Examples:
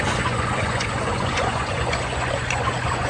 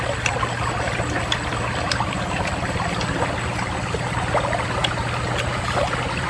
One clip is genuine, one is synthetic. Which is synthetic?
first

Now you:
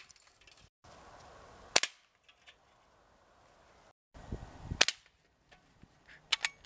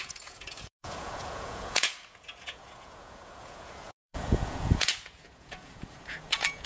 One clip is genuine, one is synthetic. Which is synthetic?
second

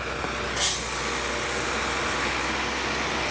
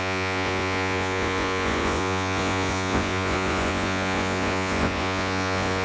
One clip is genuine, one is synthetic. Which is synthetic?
second